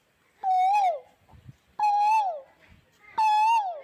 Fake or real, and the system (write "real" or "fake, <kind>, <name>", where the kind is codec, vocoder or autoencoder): real